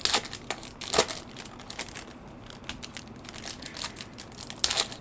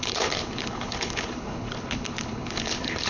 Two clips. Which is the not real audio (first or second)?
second